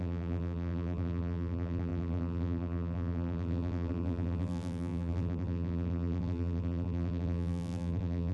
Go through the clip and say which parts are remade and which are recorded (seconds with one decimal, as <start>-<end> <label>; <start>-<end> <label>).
0.0-8.3 remade